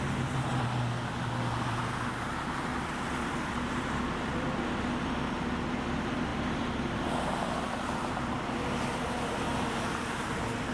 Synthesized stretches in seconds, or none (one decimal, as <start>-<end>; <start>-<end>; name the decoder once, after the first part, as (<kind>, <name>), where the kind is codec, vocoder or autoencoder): 0.5-1.8 (vocoder, BigVGAN v2); 2.7-5.1; 6.3-8.1; 9.5-10.2